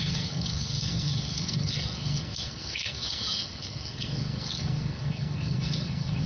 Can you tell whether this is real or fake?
fake